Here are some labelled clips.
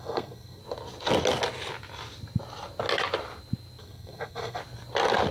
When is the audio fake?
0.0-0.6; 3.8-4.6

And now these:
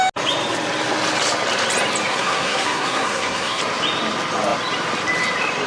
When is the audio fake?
2.1-3.6

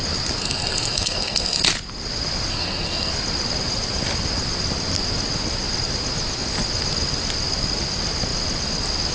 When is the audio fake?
0.4-1.6; 2.5-3.1